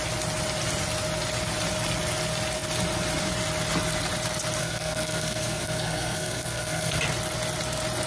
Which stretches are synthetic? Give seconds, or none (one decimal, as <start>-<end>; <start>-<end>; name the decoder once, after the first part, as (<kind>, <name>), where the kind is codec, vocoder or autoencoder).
4.6-7.0 (codec, SNAC)